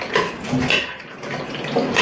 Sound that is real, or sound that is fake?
real